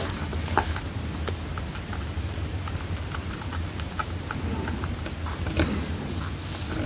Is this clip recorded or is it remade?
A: recorded